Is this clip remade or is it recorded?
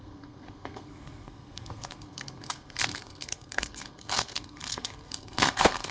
remade